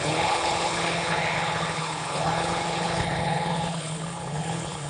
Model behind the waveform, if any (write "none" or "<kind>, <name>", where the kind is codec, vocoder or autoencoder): codec, HILCodec